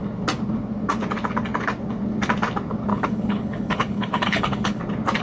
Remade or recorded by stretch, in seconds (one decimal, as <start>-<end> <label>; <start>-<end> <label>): 0.0-2.9 recorded; 2.9-4.8 remade; 4.8-5.2 recorded